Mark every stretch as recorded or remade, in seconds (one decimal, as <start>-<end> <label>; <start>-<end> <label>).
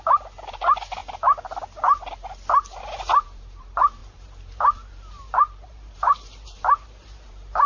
0.0-1.0 remade; 1.0-2.8 recorded; 2.8-7.7 remade